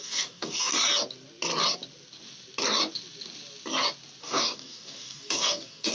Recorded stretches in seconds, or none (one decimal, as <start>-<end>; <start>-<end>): 0.7-4.2